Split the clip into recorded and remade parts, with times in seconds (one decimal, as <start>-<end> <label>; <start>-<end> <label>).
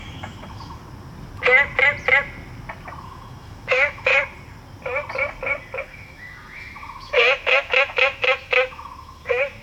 0.0-0.8 remade; 0.8-3.0 recorded; 3.0-4.1 remade; 4.1-5.8 recorded; 5.8-9.6 remade